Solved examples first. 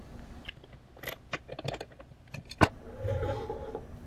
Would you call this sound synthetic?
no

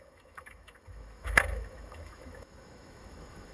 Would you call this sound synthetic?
yes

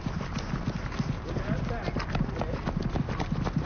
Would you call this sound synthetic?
no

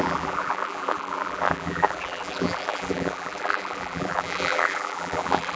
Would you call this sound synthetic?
yes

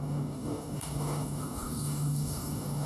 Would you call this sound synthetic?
yes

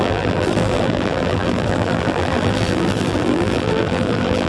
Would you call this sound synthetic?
yes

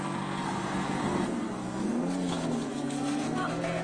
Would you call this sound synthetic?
yes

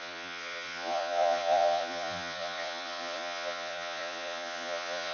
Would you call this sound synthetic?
yes